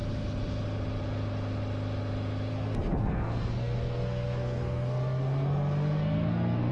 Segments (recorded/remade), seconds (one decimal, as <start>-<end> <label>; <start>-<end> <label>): 0.0-2.5 recorded; 2.5-6.7 remade